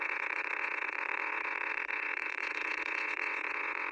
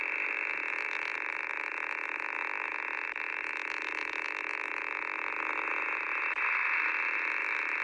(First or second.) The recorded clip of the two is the second